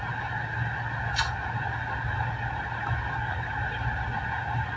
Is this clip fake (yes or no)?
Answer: no